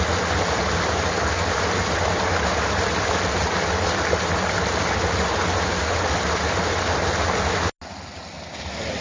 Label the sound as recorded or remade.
recorded